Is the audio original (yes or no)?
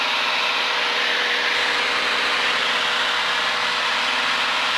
yes